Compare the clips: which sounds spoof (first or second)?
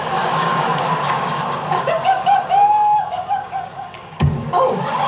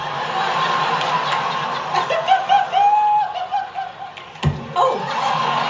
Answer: first